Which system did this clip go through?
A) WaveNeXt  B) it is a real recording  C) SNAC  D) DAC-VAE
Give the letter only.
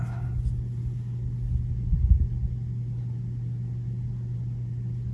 B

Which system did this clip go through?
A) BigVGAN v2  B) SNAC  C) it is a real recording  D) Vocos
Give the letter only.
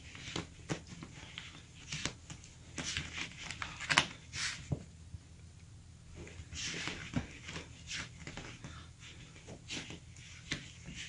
C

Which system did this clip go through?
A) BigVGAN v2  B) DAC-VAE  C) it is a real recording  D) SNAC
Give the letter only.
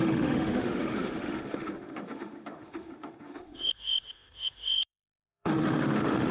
B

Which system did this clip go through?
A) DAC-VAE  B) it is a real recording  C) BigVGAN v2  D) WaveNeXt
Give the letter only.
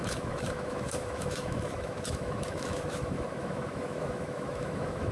A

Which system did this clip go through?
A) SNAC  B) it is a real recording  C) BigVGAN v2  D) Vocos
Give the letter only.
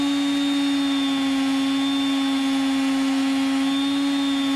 B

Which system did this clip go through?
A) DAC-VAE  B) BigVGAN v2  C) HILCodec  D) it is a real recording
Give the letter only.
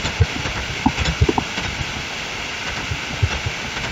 D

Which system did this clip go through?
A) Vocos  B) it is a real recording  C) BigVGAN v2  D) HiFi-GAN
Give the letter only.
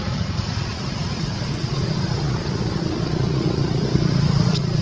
A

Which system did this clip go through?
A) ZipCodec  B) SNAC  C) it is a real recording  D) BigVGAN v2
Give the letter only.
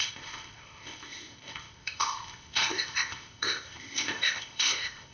A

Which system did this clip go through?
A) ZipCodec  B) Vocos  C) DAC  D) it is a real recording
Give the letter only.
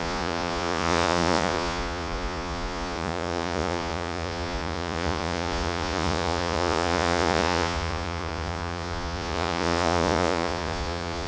B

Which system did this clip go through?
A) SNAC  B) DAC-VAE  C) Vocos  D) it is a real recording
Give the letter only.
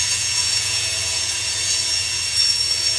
C